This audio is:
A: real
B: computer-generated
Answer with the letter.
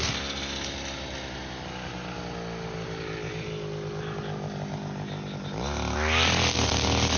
A